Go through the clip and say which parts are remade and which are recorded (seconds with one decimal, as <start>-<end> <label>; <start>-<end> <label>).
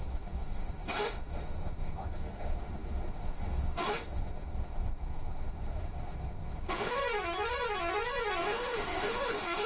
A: 0.0-7.0 remade; 7.0-8.4 recorded; 8.4-9.7 remade